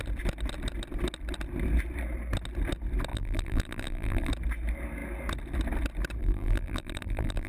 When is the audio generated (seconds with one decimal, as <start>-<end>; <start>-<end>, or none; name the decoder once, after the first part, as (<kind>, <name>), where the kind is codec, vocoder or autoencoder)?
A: 3.1-4.3 (vocoder, BigVGAN v2); 6.2-7.5